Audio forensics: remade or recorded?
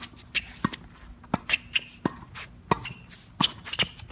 recorded